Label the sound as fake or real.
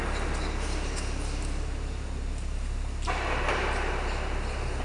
real